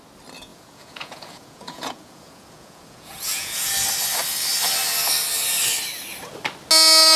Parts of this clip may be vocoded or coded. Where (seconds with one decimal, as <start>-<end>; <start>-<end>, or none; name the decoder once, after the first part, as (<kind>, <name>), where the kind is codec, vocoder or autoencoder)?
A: 0.5-3.7 (vocoder, Vocos)